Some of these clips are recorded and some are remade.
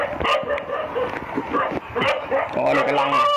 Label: recorded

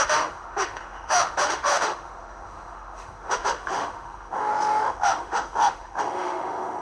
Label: remade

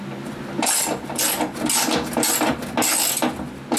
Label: recorded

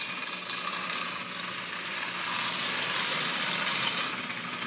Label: recorded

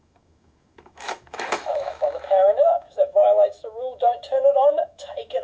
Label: remade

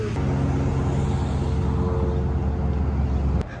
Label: recorded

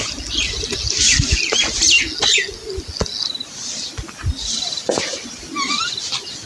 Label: recorded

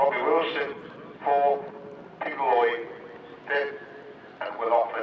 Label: recorded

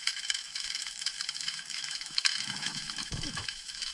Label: remade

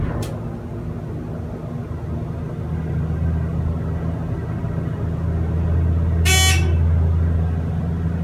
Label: recorded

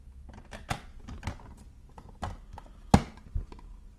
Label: recorded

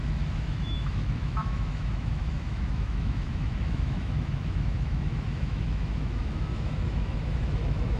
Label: remade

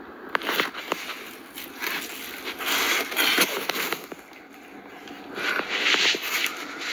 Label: recorded